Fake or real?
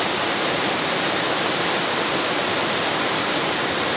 fake